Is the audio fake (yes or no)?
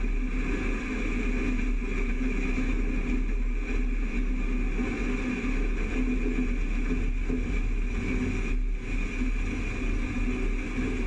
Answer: no